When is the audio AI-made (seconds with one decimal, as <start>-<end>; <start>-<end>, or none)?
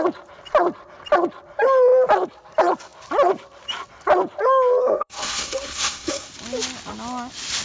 4.8-6.3